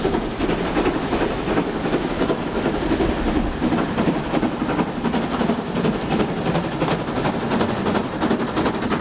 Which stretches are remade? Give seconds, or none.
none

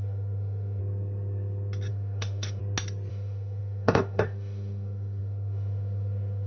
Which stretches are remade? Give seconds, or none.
0.0-0.8; 1.9-2.6; 3.1-6.5

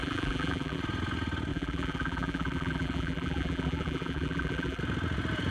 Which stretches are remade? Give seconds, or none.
0.0-0.8; 1.5-4.8

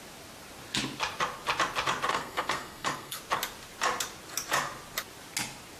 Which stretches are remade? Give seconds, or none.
2.1-3.2

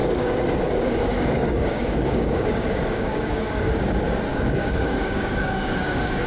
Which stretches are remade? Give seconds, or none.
0.0-3.8; 4.3-6.3

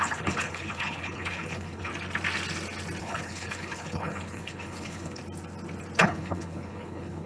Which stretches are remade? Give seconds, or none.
0.0-1.9; 3.0-5.2; 6.0-7.3

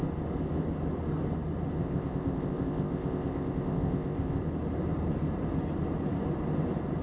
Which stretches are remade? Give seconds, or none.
1.8-4.4